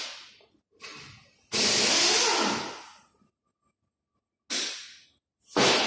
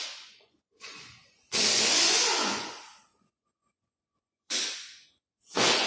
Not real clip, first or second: second